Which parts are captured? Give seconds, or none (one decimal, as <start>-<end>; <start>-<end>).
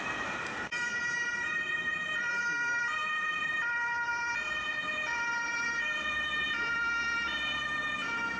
0.0-8.4